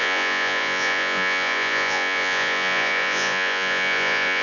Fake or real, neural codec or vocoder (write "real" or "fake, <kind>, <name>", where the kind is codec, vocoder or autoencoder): fake, vocoder, Vocos